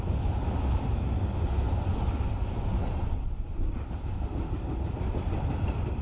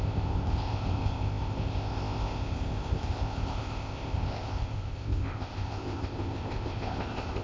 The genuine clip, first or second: first